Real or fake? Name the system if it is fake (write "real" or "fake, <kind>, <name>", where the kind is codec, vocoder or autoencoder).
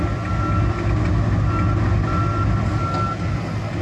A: real